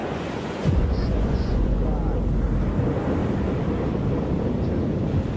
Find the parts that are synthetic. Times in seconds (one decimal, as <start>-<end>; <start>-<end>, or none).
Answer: 0.0-1.8